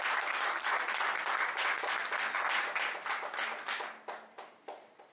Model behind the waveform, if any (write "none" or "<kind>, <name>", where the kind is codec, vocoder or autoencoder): none